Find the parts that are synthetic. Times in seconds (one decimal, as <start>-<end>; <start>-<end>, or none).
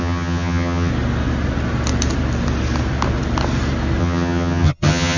0.0-0.9; 4.0-5.2